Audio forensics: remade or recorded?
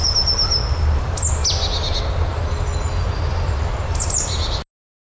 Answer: recorded